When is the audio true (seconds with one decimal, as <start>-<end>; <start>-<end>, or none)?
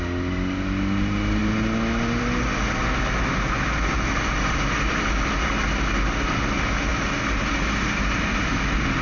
0.0-9.0